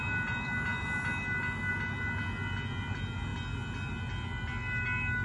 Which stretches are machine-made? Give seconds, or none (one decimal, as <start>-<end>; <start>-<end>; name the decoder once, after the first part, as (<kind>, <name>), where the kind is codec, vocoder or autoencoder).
none